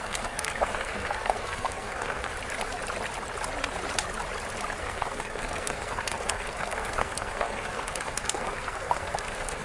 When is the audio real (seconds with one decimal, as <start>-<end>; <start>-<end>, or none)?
2.3-4.8